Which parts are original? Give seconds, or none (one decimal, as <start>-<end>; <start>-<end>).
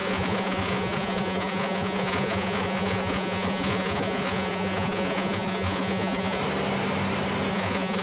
6.4-7.5